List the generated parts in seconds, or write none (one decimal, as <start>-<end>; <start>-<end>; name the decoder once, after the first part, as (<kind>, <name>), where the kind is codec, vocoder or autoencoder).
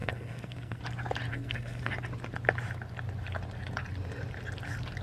0.0-0.8 (codec, SNAC); 1.3-1.9